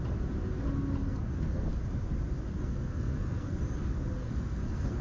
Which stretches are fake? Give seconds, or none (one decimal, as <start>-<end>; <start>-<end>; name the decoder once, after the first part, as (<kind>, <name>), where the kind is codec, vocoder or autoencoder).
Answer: 1.0-1.7 (codec, SNAC); 2.5-3.6; 4.2-5.0